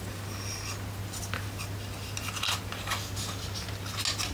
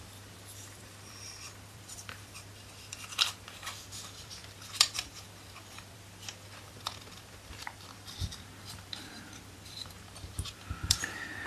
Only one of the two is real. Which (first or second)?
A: first